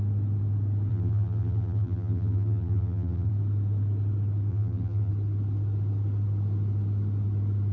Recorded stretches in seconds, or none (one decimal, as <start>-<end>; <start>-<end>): 0.0-0.9; 3.3-4.5; 5.1-7.7